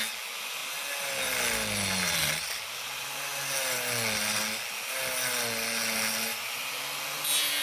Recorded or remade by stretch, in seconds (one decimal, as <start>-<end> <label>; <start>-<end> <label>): 0.0-7.6 recorded